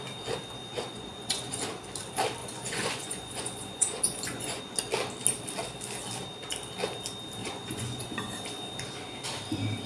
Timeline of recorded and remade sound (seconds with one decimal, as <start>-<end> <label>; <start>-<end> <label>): 0.0-0.9 recorded; 0.9-1.6 remade; 1.6-2.4 recorded; 2.4-4.6 remade; 4.6-7.4 recorded; 7.4-8.3 remade; 8.3-9.9 recorded